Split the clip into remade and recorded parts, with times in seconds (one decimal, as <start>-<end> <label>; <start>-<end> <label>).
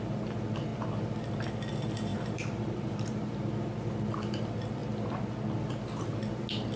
0.0-2.1 recorded; 2.1-3.4 remade; 3.4-6.8 recorded